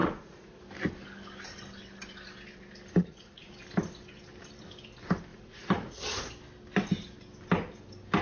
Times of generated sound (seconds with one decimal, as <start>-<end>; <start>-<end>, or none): 0.0-0.6; 3.0-3.5; 5.3-6.3